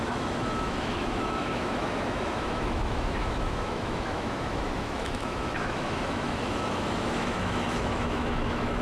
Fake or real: fake